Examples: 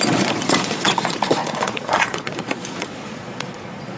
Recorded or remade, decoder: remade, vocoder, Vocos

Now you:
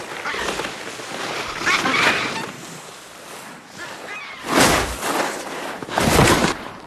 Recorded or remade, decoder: recorded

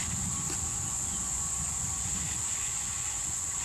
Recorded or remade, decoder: remade, vocoder, Vocos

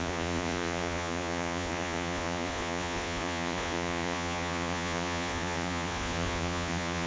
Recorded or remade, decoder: remade, vocoder, Vocos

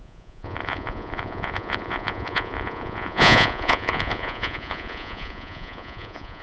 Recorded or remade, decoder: remade, vocoder, Vocos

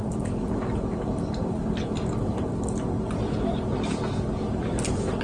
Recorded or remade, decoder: recorded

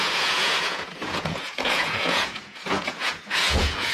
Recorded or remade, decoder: remade, vocoder, Vocos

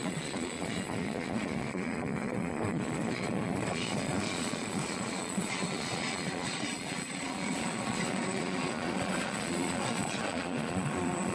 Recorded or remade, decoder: remade, vocoder, Vocos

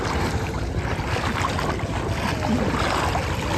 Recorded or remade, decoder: recorded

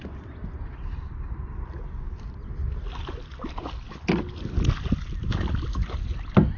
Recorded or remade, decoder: recorded